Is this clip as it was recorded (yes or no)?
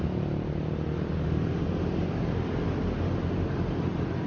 yes